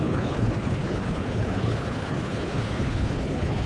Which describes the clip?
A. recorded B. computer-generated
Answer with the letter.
B